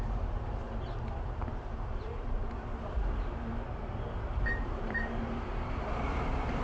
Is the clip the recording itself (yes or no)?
no